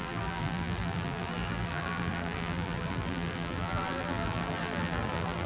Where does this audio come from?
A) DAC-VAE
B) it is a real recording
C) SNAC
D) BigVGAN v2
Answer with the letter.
D